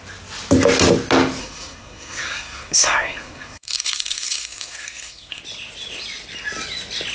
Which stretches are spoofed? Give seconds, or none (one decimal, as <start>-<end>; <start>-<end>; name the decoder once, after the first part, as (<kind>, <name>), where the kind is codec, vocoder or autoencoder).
1.4-5.4 (codec, SNAC)